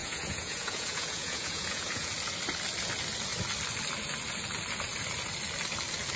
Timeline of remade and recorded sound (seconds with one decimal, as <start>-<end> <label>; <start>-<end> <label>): 0.0-2.1 remade; 2.1-6.2 recorded